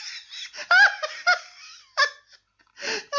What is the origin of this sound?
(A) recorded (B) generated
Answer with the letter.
A